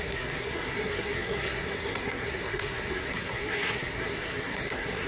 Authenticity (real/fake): fake